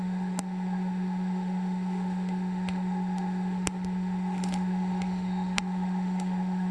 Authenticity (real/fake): fake